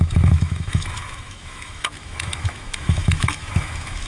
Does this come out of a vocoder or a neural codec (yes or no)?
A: yes